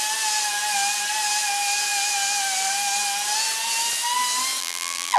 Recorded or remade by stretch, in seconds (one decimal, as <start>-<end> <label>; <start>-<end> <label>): 0.0-4.6 recorded; 4.6-5.2 remade